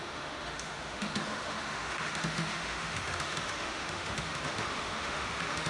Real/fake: fake